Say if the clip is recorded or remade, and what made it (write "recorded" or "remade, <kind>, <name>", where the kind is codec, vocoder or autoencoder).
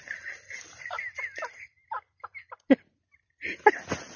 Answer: recorded